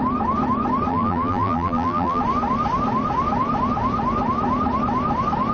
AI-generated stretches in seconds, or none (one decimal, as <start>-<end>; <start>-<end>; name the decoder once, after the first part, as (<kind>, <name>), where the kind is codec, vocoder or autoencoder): 0.9-2.2 (vocoder, BigVGAN v2)